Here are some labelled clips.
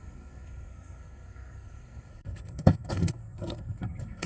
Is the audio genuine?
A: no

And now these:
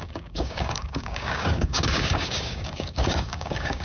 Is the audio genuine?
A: no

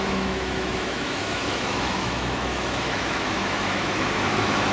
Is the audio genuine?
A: no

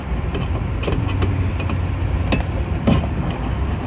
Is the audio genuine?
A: yes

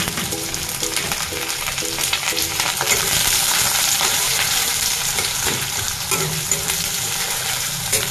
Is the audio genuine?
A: no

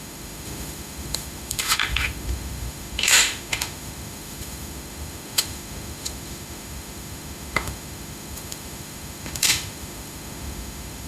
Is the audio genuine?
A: no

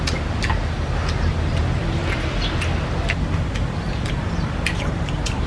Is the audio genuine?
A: yes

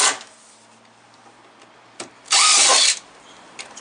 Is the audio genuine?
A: no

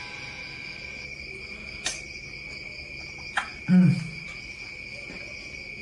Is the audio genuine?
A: yes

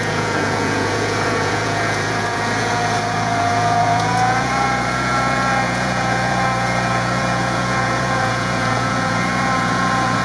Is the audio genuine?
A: no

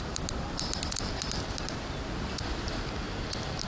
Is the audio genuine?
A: yes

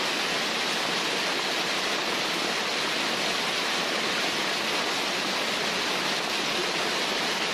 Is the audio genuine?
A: yes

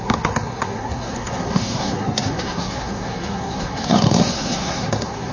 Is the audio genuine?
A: no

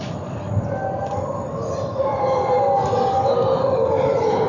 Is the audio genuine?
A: yes